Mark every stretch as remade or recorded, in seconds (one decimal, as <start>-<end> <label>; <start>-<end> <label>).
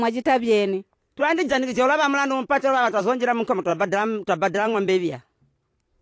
0.0-3.7 recorded; 3.7-5.3 remade; 5.3-6.0 recorded